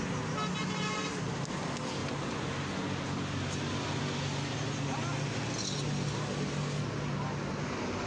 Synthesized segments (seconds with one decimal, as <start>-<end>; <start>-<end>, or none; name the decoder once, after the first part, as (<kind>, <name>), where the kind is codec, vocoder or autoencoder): none